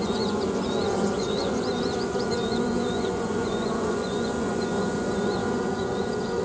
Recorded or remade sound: remade